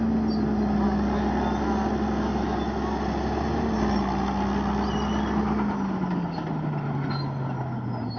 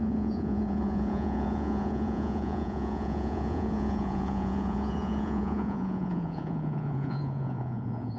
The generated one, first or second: second